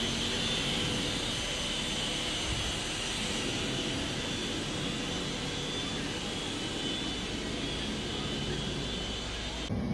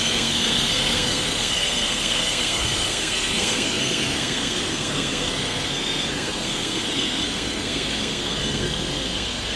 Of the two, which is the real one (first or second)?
first